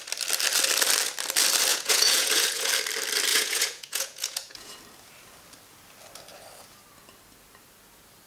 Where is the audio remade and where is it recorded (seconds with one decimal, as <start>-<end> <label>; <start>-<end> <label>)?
0.0-1.7 recorded; 1.7-2.7 remade; 2.7-3.3 recorded; 3.3-4.8 remade; 4.8-8.3 recorded